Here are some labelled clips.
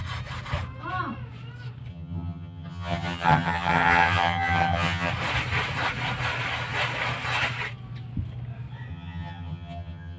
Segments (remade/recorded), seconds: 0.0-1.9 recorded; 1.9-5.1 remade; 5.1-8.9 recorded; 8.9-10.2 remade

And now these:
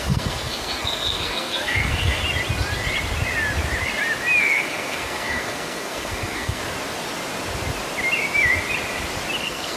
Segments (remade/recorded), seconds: 0.0-2.2 remade; 2.2-4.4 recorded; 4.4-6.6 remade; 6.6-9.4 recorded; 9.4-9.8 remade

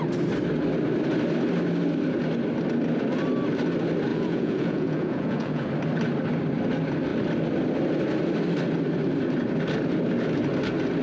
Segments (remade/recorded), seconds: 0.0-4.1 recorded; 4.1-5.7 remade; 5.7-11.0 recorded

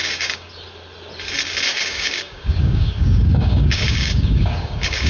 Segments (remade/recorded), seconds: 0.0-0.5 remade; 0.5-1.7 recorded; 1.7-5.1 remade

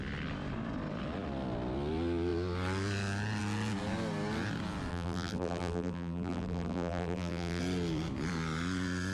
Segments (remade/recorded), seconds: 0.0-4.9 recorded; 4.9-7.6 remade; 7.6-9.1 recorded

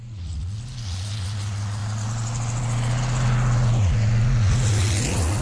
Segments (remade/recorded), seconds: 0.0-5.4 recorded